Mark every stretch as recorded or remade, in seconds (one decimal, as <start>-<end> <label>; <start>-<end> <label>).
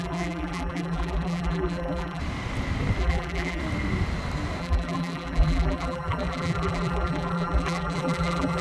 0.0-2.2 remade; 2.2-3.0 recorded; 3.0-3.6 remade; 3.6-4.6 recorded; 4.6-8.6 remade